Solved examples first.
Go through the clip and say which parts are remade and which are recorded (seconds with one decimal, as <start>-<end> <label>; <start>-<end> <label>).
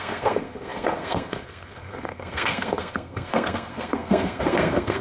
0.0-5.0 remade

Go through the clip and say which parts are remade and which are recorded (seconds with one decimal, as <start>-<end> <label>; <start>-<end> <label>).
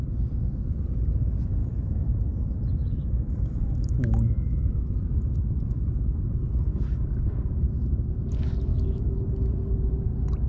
0.0-1.6 recorded; 1.6-6.2 remade; 6.2-8.7 recorded; 8.7-9.3 remade; 9.3-10.5 recorded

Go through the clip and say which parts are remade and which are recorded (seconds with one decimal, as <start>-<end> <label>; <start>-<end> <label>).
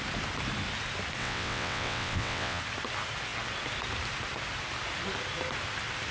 0.0-1.2 recorded; 1.2-2.6 remade; 2.6-6.1 recorded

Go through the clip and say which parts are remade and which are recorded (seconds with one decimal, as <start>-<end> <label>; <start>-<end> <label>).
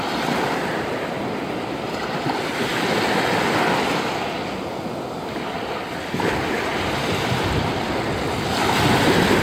0.0-9.4 recorded